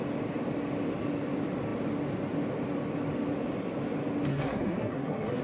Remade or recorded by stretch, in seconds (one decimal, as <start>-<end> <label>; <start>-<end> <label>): 0.0-4.3 recorded; 4.3-5.4 remade